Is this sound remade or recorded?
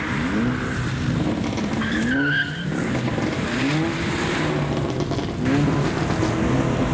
recorded